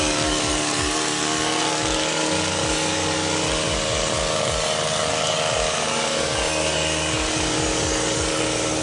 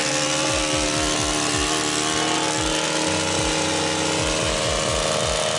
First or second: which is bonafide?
second